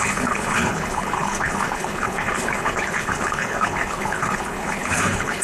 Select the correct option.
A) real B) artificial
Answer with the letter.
B